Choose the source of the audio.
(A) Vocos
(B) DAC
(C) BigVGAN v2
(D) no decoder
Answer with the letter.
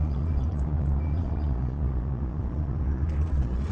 A